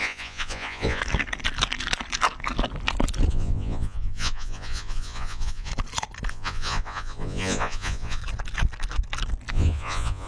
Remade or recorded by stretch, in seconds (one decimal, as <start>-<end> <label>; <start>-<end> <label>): 0.0-1.0 remade; 1.0-3.3 recorded; 3.3-5.7 remade; 5.7-6.3 recorded; 6.3-8.2 remade; 8.2-9.5 recorded; 9.5-10.3 remade